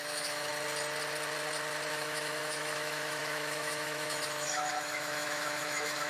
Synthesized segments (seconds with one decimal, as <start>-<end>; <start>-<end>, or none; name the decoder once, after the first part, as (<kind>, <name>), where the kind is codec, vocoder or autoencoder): 0.0-0.5 (autoencoder, DAC-VAE); 1.9-6.1